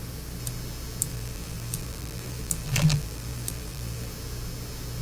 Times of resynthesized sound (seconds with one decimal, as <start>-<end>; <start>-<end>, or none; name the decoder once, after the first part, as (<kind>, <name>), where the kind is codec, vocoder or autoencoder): 1.1-4.1 (vocoder, BigVGAN v2)